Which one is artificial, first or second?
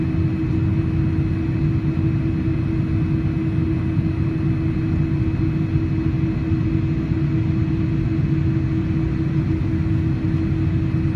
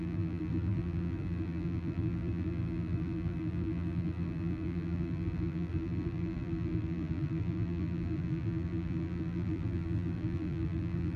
second